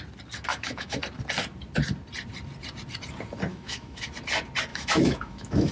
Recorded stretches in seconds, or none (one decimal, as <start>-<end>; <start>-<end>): 0.0-0.5; 1.0-3.5; 4.1-4.7